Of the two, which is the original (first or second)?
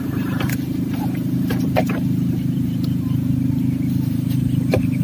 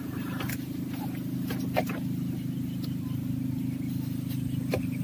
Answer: second